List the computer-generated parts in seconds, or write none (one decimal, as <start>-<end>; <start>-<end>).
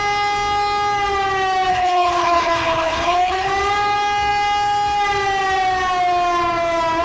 1.7-3.5